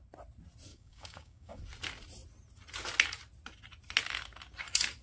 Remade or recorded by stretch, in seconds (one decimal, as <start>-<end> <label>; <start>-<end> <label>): 0.0-0.7 recorded; 0.7-1.6 remade; 1.6-5.0 recorded